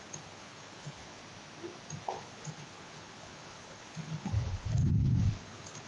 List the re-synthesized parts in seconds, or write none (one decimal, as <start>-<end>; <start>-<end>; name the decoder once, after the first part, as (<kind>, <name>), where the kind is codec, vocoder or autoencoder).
0.0-1.2 (codec, HILCodec); 2.0-5.9